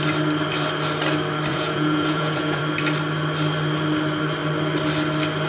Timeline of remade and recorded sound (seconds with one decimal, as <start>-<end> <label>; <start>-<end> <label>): 0.0-1.5 recorded; 1.5-2.6 remade; 2.6-5.5 recorded